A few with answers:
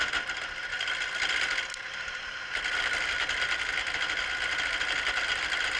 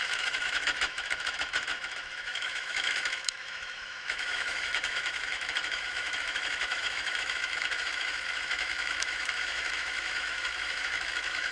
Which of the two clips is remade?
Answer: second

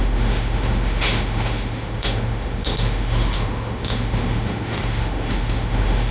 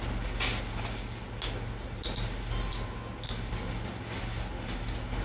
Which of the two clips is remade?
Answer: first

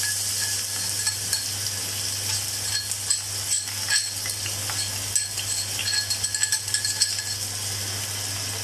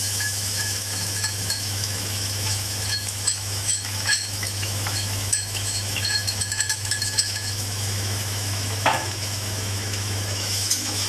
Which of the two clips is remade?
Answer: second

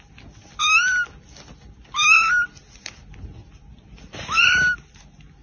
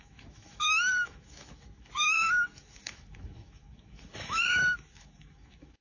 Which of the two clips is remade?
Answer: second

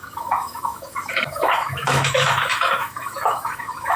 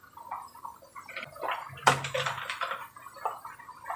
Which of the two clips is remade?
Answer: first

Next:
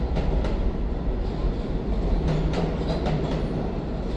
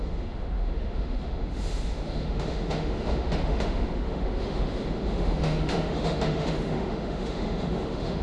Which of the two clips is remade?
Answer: second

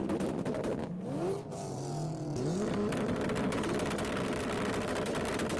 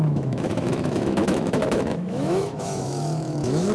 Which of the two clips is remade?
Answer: second